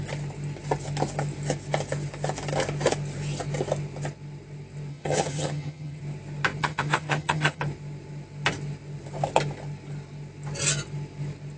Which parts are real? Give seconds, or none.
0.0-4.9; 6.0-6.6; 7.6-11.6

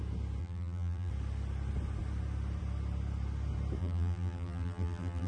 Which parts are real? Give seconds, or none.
0.0-0.4; 1.1-3.8

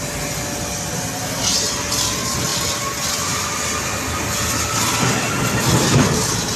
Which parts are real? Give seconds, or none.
0.0-6.6

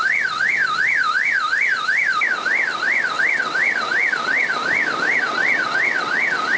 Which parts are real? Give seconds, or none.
0.6-3.2; 4.6-5.2

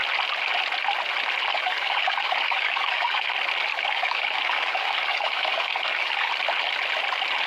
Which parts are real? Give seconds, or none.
0.0-1.5; 3.3-3.7; 6.3-7.5

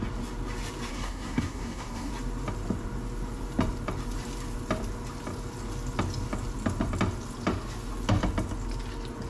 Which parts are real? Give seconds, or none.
0.0-0.9; 2.1-9.3

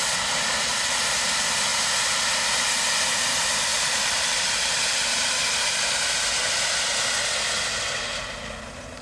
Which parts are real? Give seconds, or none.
0.0-3.7; 6.2-9.0

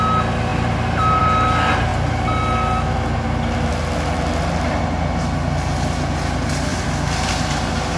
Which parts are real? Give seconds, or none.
0.0-6.7; 7.3-8.0